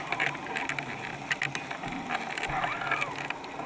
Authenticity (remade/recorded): recorded